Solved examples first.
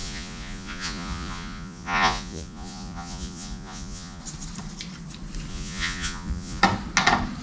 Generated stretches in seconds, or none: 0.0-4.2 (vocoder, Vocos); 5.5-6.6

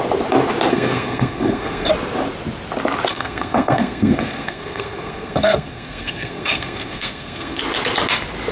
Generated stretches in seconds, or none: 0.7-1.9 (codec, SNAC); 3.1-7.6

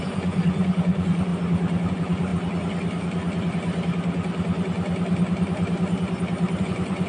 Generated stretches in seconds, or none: 0.0-1.3 (vocoder, Vocos); 1.9-2.3; 6.6-7.1

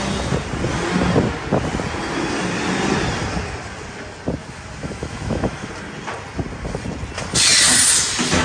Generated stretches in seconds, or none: 4.4-5.7 (autoencoder, DAC-VAE)

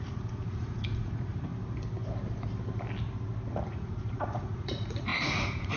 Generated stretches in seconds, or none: 0.0-1.5 (vocoder, Vocos); 3.7-5.8

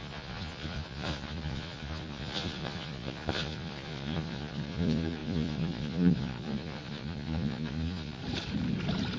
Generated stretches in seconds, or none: 0.0-8.2 (vocoder, Vocos)

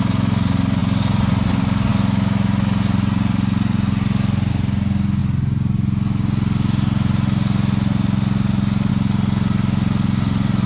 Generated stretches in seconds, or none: none